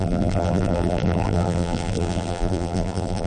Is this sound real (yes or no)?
no